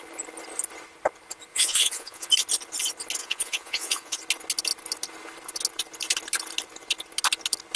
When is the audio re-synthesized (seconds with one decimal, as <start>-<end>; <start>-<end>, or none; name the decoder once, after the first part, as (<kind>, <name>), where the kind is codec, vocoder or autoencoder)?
1.5-2.3 (vocoder, Vocos); 3.2-4.2